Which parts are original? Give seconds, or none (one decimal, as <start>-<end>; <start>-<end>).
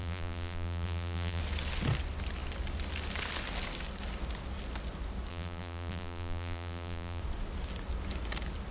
1.4-5.3; 7.2-8.7